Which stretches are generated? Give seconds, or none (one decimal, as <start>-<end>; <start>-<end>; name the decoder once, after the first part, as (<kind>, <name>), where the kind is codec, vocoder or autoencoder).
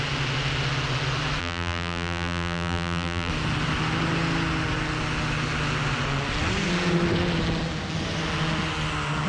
1.4-3.3 (vocoder, BigVGAN v2)